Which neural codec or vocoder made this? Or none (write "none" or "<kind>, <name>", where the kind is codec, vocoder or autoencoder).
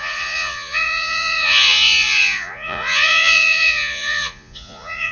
vocoder, Vocos